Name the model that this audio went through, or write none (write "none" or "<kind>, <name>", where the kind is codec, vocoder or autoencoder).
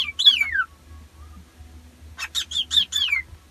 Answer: none